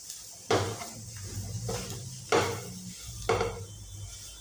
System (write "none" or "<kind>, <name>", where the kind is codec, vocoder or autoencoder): none